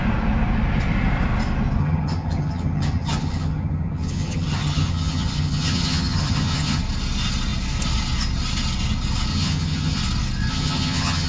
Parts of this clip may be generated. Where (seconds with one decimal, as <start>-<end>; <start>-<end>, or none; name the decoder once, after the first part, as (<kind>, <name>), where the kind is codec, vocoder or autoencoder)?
1.8-6.8 (vocoder, HiFi-GAN); 9.3-10.0; 10.5-11.3